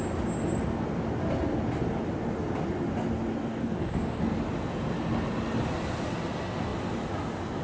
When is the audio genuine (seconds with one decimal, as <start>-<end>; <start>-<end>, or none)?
0.0-3.5; 4.2-7.6